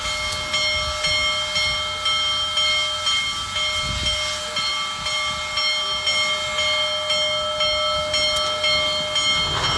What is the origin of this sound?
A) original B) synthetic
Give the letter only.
A